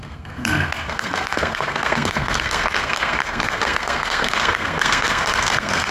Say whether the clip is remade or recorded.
remade